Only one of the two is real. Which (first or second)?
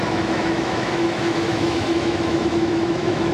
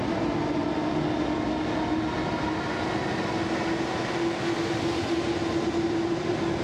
second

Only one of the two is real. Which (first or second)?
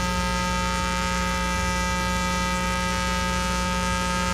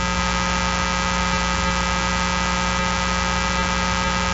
second